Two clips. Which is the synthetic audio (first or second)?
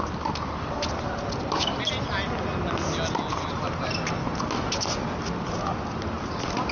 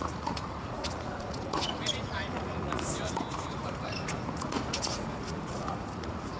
second